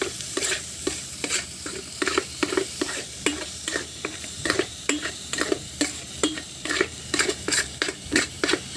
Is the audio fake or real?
fake